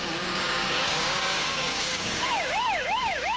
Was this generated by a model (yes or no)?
yes